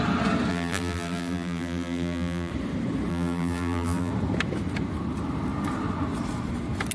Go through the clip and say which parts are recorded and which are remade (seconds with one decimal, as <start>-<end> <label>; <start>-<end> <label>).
0.0-0.5 recorded; 0.5-2.5 remade; 2.5-3.1 recorded; 3.1-4.1 remade; 4.1-6.9 recorded